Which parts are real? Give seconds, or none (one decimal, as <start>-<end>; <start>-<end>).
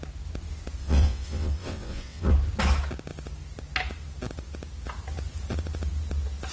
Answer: 0.0-0.8; 2.3-6.5